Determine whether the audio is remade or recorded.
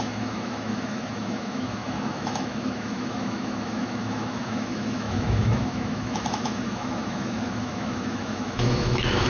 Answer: remade